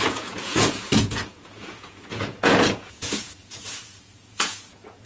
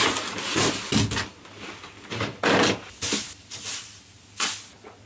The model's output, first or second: first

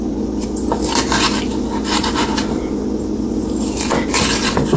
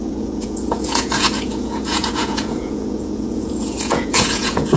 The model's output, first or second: second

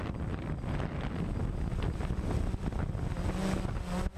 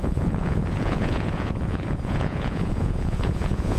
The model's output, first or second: second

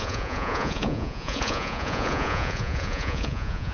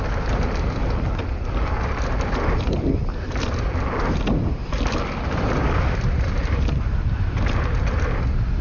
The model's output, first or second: first